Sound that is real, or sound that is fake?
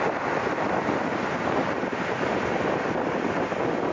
real